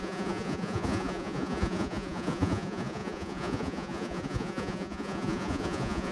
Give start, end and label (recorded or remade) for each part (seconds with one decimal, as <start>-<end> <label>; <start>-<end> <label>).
0.0-6.1 remade

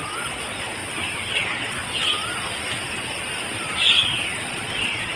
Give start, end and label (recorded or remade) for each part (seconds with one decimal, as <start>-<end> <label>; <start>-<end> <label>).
0.0-0.8 remade; 0.8-1.3 recorded; 1.3-1.8 remade; 1.8-4.5 recorded; 4.5-5.2 remade

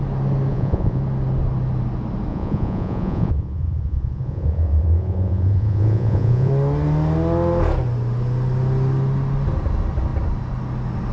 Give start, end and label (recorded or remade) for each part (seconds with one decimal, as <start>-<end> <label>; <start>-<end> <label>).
0.0-0.5 recorded; 0.5-1.0 remade; 1.0-2.3 recorded; 2.3-6.5 remade; 6.5-11.1 recorded

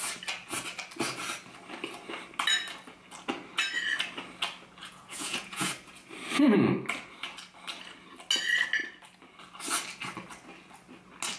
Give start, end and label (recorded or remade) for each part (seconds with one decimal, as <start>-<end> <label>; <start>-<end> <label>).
0.0-4.8 recorded; 4.8-5.7 remade; 5.7-11.4 recorded

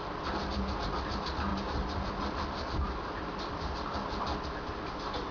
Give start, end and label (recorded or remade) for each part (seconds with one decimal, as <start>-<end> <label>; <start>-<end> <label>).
0.0-5.3 recorded